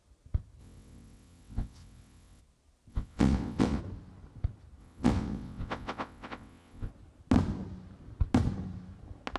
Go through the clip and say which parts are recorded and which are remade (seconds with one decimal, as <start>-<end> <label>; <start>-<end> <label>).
0.0-0.6 recorded; 0.6-2.4 remade; 2.4-2.9 recorded; 2.9-3.8 remade; 3.8-4.8 recorded; 4.8-6.9 remade; 6.9-9.4 recorded